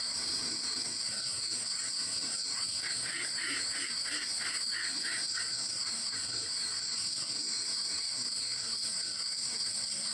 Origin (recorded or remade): remade